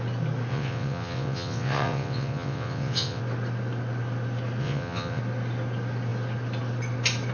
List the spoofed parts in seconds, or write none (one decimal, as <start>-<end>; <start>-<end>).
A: 0.5-3.2; 4.6-5.2